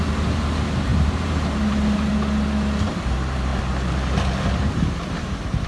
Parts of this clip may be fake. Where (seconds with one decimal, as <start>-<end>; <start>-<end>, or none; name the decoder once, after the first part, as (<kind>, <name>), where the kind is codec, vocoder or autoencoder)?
0.0-2.1 (vocoder, BigVGAN v2); 2.9-3.5; 4.5-5.7

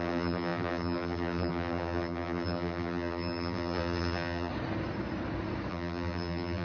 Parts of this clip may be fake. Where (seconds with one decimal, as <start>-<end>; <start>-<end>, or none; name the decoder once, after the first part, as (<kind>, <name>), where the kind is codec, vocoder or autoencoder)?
0.0-4.5 (vocoder, BigVGAN v2); 5.7-6.6

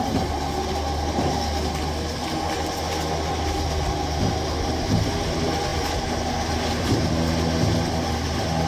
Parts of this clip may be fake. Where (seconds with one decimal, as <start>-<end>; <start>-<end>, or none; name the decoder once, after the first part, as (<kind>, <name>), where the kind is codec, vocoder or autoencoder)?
5.7-7.1 (vocoder, BigVGAN v2)

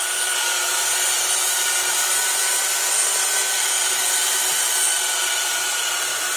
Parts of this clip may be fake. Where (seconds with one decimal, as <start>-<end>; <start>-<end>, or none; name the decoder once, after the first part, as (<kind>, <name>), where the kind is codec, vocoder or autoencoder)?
none

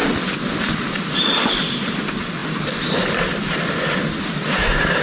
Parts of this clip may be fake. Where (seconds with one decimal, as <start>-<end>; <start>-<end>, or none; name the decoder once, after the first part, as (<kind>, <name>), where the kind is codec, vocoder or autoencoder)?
none

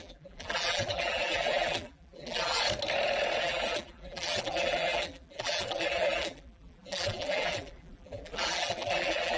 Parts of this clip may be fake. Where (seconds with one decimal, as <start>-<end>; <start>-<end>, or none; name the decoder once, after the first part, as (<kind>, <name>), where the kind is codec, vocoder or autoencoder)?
0.0-2.6 (vocoder, BigVGAN v2); 3.4-9.4